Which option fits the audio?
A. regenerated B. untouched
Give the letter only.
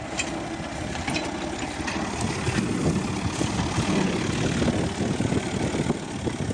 B